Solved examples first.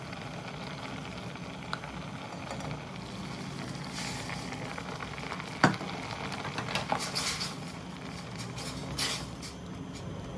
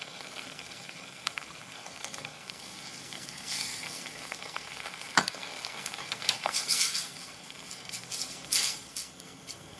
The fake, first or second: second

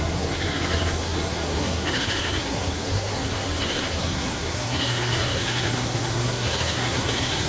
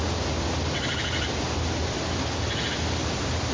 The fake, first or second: first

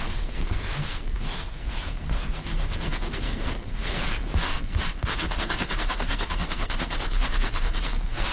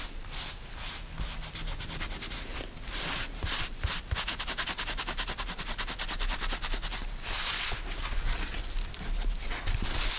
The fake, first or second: first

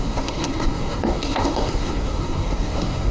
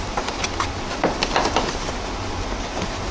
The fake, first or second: first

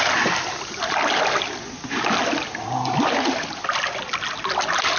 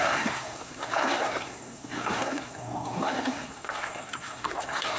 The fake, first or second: second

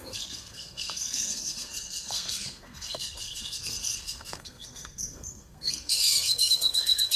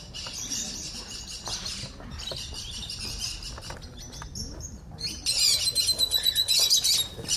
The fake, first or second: first